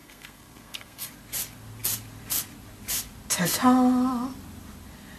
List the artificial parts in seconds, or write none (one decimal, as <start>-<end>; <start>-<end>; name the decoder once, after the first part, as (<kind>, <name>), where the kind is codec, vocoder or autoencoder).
0.0-1.1 (codec, SNAC)